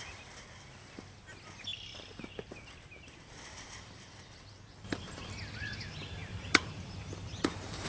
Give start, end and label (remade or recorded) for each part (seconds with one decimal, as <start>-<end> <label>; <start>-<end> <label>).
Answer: 0.0-1.7 recorded; 1.7-4.7 remade; 4.7-6.2 recorded; 6.2-7.4 remade; 7.4-7.9 recorded